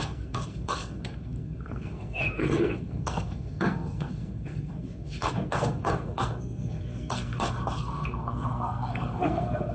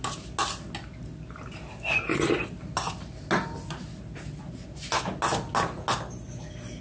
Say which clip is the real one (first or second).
second